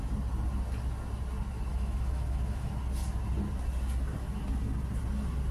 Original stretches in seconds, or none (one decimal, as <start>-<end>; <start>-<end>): 0.0-1.7; 2.7-5.5